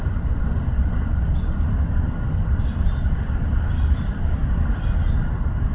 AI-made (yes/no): no